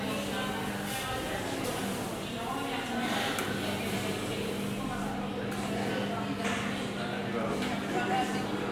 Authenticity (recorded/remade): recorded